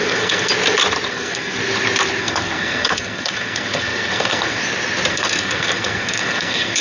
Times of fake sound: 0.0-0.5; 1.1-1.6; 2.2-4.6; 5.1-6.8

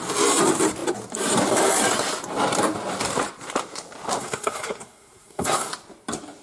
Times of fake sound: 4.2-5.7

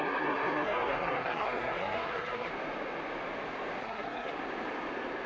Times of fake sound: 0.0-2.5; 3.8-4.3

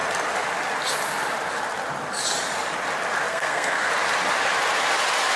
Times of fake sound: 3.3-3.9

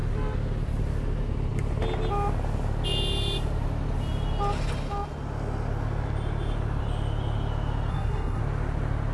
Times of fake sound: 7.9-8.4

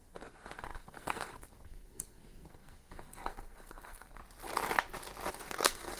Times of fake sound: 0.0-4.2; 5.3-6.0

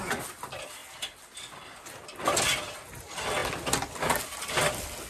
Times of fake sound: none

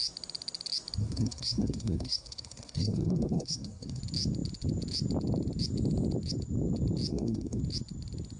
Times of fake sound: 1.0-4.0; 7.1-7.6